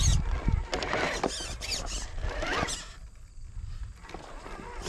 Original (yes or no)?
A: yes